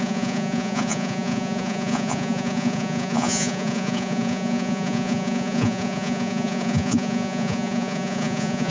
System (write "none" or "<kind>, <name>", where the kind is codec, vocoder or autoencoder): vocoder, Vocos